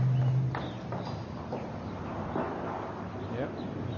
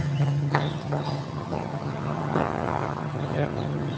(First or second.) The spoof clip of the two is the second